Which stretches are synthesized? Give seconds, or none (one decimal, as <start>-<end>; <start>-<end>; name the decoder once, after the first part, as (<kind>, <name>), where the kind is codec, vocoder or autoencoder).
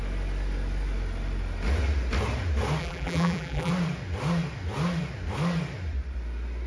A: 2.8-3.7 (vocoder, BigVGAN v2)